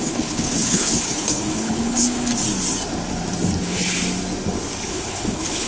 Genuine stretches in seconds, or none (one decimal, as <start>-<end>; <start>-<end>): 2.3-3.6; 4.0-4.9